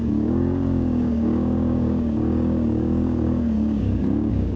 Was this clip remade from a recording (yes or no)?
yes